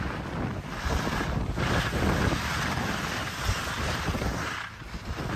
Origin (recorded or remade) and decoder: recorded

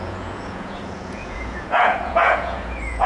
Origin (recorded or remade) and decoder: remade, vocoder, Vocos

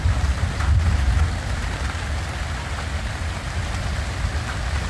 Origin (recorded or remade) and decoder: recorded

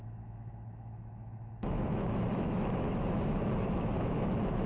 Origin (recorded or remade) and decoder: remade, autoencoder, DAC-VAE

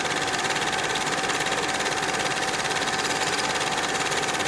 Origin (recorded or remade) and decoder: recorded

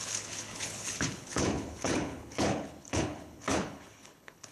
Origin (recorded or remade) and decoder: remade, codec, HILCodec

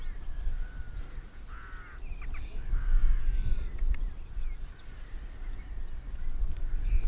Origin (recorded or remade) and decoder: recorded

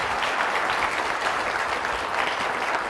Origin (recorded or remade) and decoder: recorded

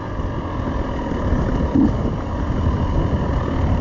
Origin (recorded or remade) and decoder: recorded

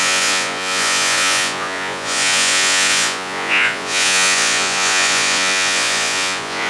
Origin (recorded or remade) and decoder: remade, vocoder, Vocos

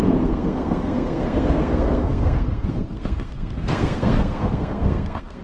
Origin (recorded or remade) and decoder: remade, codec, SNAC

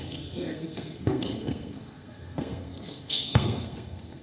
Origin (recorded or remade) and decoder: remade, codec, SNAC